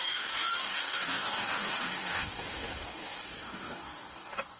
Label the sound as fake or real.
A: fake